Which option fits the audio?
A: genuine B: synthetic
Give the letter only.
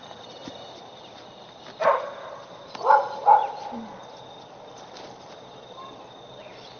A